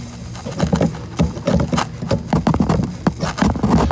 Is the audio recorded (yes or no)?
yes